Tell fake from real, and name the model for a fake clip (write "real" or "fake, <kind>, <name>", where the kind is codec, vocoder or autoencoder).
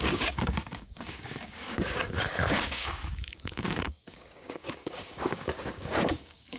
fake, codec, DAC